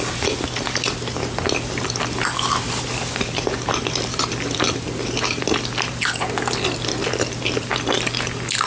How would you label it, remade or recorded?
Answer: recorded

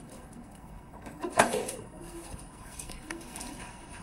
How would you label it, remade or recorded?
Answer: remade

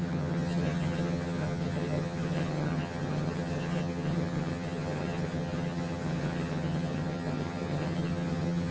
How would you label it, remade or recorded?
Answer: remade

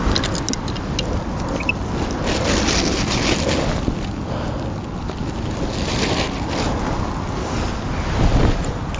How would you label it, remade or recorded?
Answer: recorded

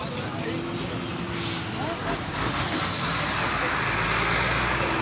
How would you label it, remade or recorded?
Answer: recorded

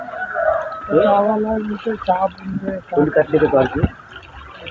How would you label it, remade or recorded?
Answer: recorded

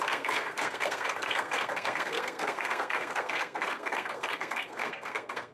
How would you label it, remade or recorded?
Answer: remade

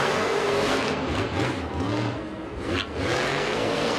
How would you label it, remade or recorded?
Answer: remade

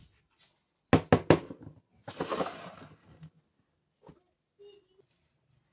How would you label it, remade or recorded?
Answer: recorded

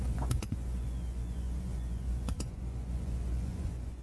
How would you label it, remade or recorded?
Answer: remade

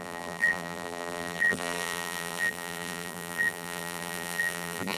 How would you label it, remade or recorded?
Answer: remade